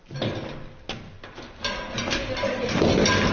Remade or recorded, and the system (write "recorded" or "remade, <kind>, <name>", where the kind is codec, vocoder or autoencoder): recorded